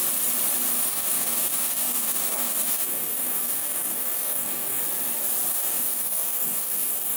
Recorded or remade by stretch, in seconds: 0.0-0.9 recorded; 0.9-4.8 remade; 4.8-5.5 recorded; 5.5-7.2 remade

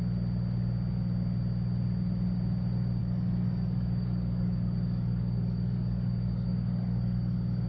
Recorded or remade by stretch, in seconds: 0.0-3.0 recorded; 3.0-7.7 remade

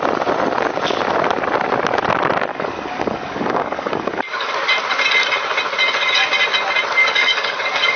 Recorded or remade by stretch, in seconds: 0.0-2.5 recorded; 2.5-4.5 remade; 4.5-7.0 recorded; 7.0-8.0 remade

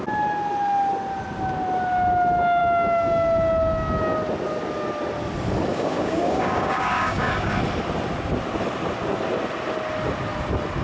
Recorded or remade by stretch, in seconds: 0.0-5.7 recorded; 5.7-7.5 remade; 7.5-10.8 recorded

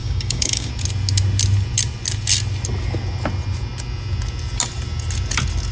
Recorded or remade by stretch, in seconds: 0.0-0.7 remade; 0.7-5.7 recorded